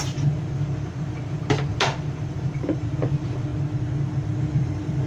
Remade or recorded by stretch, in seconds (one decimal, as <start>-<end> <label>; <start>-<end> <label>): 0.0-3.5 remade; 3.5-4.4 recorded; 4.4-5.1 remade